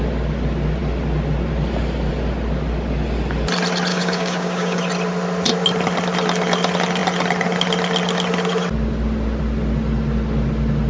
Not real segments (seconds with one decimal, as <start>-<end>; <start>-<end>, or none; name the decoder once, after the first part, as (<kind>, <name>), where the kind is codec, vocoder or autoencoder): 3.9-4.8 (codec, DAC)